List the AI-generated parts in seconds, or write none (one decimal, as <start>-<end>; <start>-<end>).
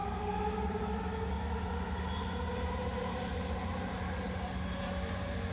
none